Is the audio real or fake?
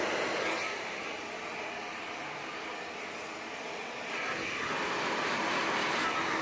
real